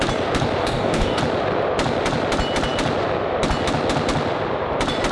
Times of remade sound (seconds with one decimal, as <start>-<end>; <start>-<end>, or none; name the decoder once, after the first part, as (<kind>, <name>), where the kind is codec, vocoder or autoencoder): 0.6-1.2 (codec, DAC)